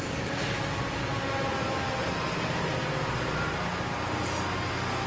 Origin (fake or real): real